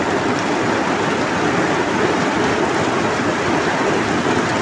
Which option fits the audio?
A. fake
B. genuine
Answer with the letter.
B